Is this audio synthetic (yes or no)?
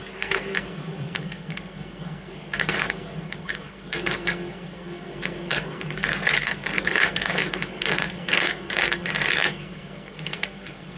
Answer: yes